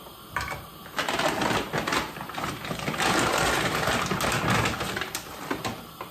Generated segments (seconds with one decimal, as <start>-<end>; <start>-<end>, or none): none